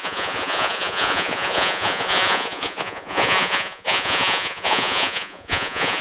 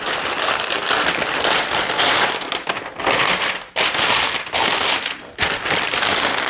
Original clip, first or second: second